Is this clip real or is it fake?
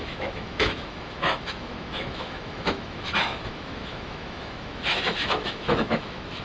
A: fake